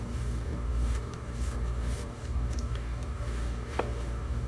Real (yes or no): no